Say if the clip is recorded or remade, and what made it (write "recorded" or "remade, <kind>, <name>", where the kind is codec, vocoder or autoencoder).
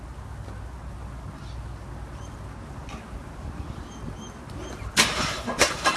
recorded